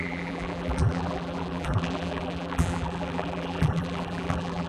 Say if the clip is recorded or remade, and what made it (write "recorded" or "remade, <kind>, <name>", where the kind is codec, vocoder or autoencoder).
remade, vocoder, BigVGAN v2